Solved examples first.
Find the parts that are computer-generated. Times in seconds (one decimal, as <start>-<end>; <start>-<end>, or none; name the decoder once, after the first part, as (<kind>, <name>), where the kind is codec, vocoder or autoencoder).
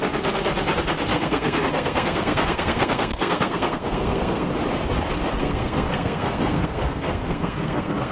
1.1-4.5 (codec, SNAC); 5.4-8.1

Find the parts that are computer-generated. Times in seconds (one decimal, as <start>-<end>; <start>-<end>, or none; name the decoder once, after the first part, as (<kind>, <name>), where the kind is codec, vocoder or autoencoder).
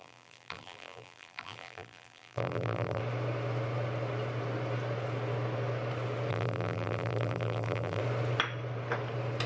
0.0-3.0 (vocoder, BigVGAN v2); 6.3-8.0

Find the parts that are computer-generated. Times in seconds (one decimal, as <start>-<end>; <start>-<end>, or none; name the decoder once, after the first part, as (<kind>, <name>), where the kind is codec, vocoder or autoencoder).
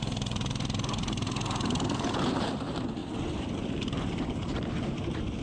0.0-3.0 (vocoder, BigVGAN v2); 3.6-5.4